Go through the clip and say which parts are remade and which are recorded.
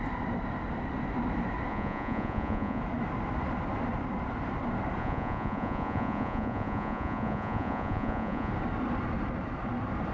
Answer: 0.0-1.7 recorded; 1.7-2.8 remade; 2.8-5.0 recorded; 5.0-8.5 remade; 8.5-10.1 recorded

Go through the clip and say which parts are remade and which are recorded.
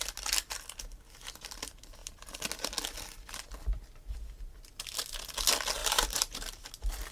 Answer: 0.0-5.8 recorded; 5.8-6.6 remade; 6.6-7.1 recorded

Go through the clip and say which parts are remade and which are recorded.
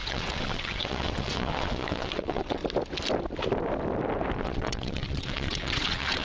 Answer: 0.0-2.6 remade; 2.6-4.4 recorded; 4.4-6.2 remade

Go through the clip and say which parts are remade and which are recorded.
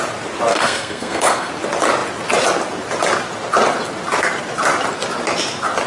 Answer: 0.0-0.5 recorded; 0.5-1.5 remade; 1.5-5.9 recorded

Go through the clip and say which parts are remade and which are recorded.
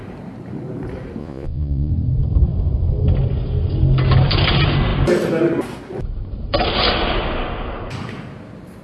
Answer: 0.0-1.2 recorded; 1.2-1.9 remade; 1.9-8.8 recorded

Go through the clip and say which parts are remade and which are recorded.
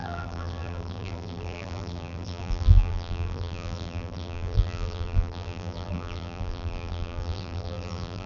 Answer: 0.0-8.3 remade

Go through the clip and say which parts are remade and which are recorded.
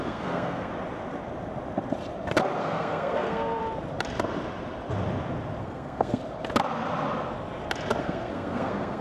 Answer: 0.0-0.7 remade; 0.7-2.6 recorded; 2.6-3.6 remade; 3.6-5.6 recorded; 5.6-6.2 remade; 6.2-8.0 recorded; 8.0-9.0 remade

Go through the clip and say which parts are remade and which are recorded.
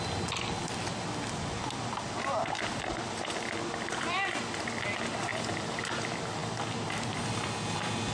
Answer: 0.0-8.1 recorded